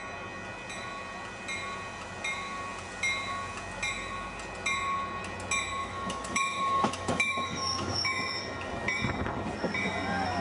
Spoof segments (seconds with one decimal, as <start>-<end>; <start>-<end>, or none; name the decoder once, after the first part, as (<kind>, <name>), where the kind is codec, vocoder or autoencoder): 5.8-8.4 (autoencoder, DAC-VAE)